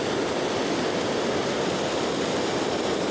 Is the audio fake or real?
real